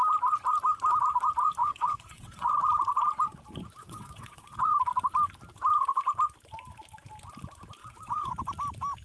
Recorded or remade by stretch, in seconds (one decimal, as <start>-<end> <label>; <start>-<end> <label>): 0.0-1.6 recorded; 1.6-2.5 remade; 2.5-3.8 recorded; 3.8-4.7 remade; 4.7-7.8 recorded; 7.8-8.3 remade; 8.3-9.0 recorded